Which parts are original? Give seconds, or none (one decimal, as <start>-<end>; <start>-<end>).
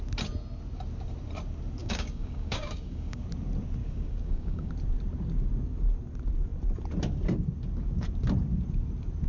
0.0-1.8; 3.2-3.8; 4.7-9.3